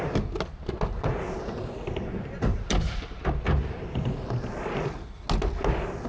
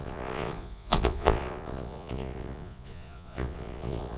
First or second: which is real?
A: first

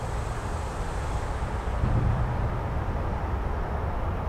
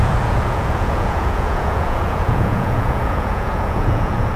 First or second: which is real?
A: first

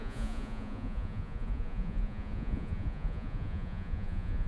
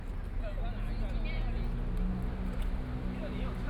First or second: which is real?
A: second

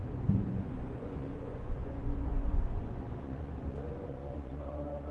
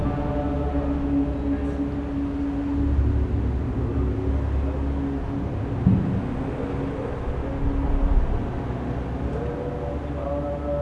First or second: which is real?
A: second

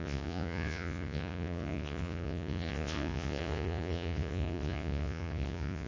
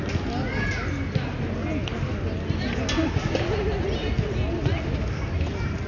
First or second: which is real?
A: second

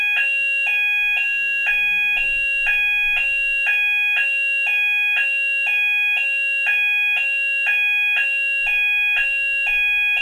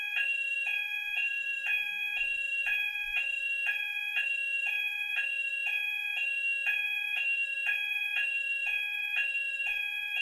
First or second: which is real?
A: first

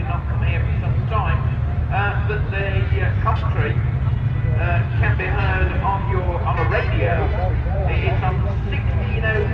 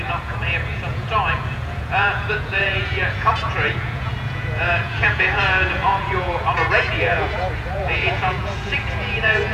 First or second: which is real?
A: first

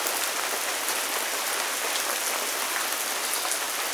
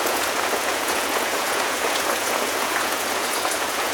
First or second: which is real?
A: first